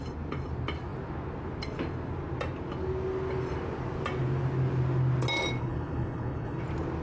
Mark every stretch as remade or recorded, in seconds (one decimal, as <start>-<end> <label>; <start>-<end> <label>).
0.0-5.6 recorded; 5.6-6.6 remade; 6.6-7.0 recorded